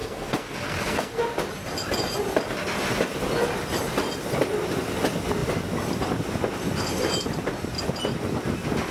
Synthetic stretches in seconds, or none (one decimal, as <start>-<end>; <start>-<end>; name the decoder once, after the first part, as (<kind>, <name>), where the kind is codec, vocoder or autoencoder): 0.0-1.2 (codec, SNAC)